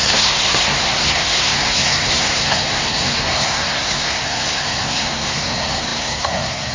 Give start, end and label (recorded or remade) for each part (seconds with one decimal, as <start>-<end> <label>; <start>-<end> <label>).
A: 0.0-6.7 remade